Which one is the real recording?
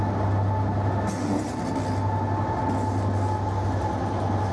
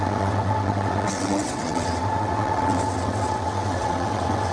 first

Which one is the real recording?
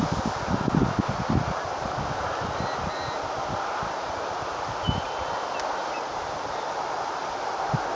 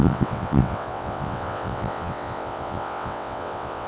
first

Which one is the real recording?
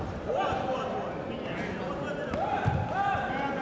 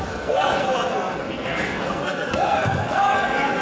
first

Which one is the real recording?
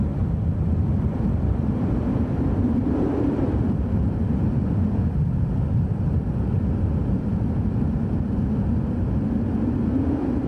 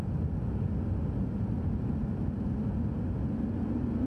second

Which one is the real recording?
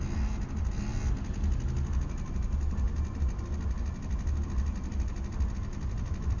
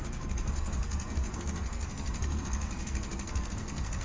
first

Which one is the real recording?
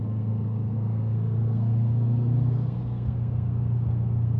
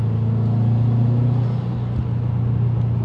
second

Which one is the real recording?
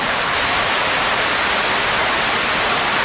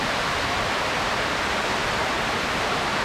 first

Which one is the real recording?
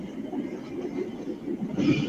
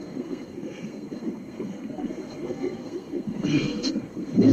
first